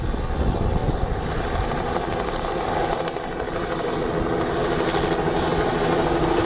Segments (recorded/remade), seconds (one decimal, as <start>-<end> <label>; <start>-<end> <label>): 0.0-0.8 recorded; 0.8-3.9 remade; 3.9-5.5 recorded; 5.5-6.5 remade